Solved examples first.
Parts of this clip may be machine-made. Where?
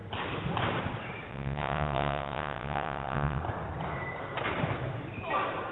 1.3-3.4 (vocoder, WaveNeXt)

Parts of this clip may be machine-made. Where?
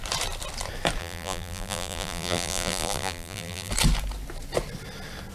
1.0-3.7 (vocoder, BigVGAN v2)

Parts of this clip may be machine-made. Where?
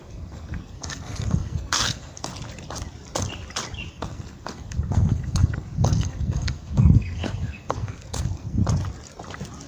0.0-2.3 (codec, SNAC); 3.9-8.6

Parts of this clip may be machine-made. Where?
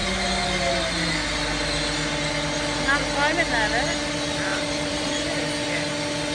4.5-5.4 (vocoder, BigVGAN v2)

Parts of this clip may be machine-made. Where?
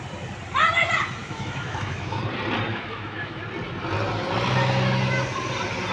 1.2-2.2 (autoencoder, DAC-VAE); 2.7-3.4